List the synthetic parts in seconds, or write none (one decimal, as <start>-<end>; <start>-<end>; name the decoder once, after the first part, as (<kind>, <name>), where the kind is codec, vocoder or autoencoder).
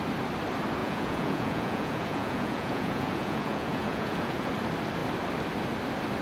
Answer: 0.8-4.5 (vocoder, Vocos)